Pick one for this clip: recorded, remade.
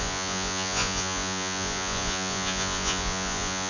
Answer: remade